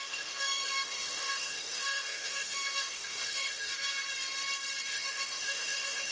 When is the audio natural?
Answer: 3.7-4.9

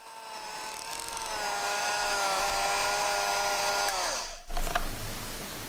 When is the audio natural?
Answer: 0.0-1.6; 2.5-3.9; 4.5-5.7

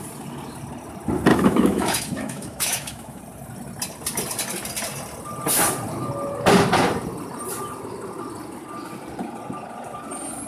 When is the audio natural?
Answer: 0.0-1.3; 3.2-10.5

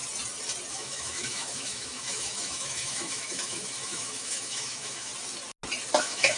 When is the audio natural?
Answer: 0.0-0.7; 5.1-6.0

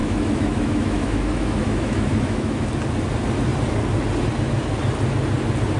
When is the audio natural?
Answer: 2.7-5.8

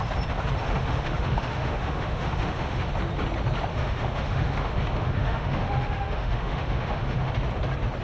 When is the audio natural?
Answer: 0.0-0.6; 2.9-3.7; 7.3-8.0

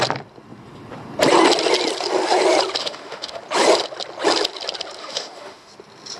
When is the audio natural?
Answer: 0.0-2.8; 3.4-5.0; 5.7-6.2

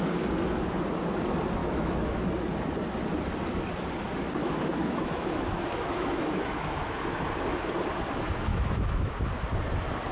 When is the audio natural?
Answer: 0.0-1.6; 2.3-4.4; 7.2-8.5; 9.1-10.1